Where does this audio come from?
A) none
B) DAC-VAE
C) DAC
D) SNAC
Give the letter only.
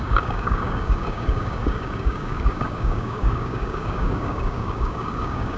C